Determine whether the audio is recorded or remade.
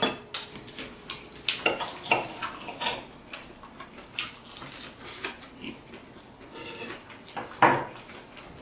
recorded